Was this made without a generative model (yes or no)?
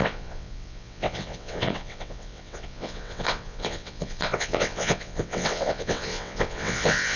no